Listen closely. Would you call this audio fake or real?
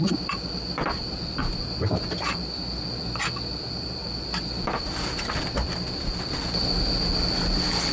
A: real